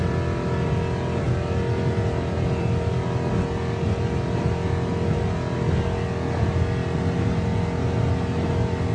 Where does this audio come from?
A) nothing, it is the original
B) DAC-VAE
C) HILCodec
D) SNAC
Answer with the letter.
A